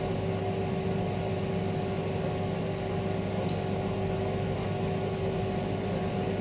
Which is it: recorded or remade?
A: recorded